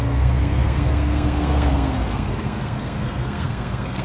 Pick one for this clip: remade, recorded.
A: remade